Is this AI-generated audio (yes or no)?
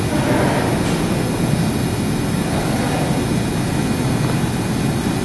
no